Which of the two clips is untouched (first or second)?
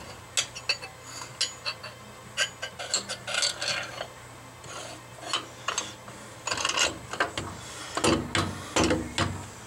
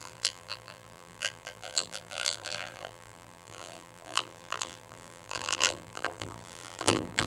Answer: first